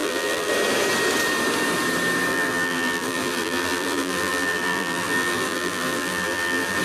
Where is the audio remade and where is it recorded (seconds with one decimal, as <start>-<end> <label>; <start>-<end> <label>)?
0.0-0.5 remade; 0.5-2.3 recorded; 2.3-6.8 remade